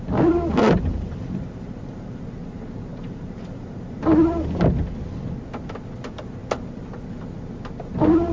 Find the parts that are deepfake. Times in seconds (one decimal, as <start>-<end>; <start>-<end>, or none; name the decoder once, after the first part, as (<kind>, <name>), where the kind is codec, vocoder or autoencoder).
0.6-2.2 (vocoder, BigVGAN v2); 2.9-4.0